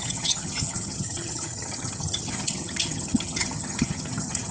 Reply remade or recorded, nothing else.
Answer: remade